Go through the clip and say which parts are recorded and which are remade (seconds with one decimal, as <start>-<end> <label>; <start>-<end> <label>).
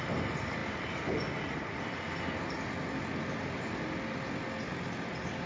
0.0-5.5 recorded